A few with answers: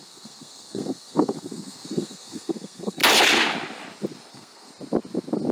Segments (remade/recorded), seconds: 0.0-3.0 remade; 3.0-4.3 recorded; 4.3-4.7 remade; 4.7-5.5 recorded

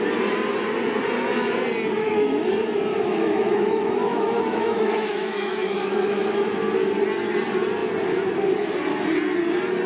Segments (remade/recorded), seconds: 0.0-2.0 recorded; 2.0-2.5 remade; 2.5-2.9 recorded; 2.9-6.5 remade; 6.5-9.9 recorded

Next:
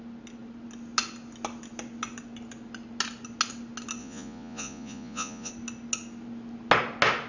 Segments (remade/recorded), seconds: 0.0-4.0 recorded; 4.0-5.5 remade; 5.5-7.3 recorded

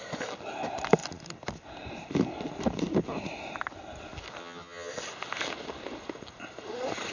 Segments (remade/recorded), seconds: 0.0-4.4 recorded; 4.4-4.9 remade; 4.9-7.1 recorded

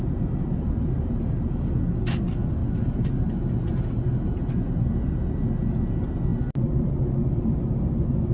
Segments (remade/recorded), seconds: 0.0-8.3 recorded

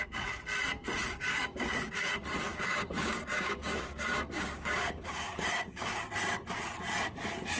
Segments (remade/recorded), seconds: 0.0-1.0 recorded; 1.0-2.1 remade; 2.1-2.5 recorded; 2.5-6.1 remade; 6.1-7.6 recorded

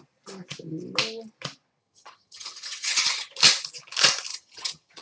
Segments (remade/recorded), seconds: 0.0-1.8 recorded; 1.8-3.3 remade; 3.3-4.3 recorded; 4.3-5.0 remade